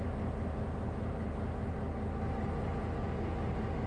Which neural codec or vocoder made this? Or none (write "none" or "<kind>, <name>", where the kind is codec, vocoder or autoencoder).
none